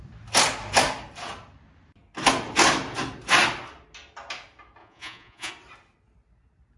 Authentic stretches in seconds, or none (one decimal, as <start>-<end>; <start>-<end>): 0.0-4.8; 5.5-6.8

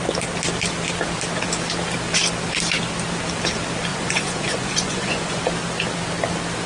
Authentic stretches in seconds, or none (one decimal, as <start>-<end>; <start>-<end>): 0.0-3.9; 5.4-6.7